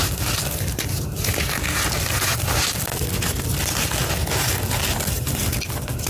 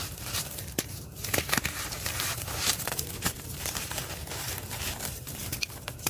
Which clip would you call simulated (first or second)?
second